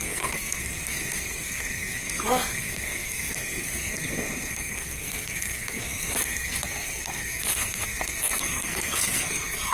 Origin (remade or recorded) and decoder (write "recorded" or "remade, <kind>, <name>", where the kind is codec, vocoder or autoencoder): remade, codec, SNAC